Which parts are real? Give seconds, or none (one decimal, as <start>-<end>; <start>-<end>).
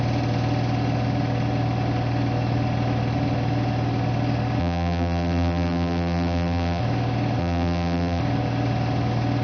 0.0-4.6; 6.8-7.4; 8.2-9.4